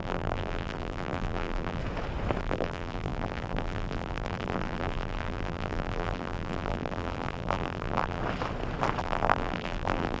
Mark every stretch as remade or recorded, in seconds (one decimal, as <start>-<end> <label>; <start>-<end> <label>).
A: 0.0-1.8 remade; 1.8-2.4 recorded; 2.4-8.2 remade; 8.2-9.0 recorded; 9.0-10.2 remade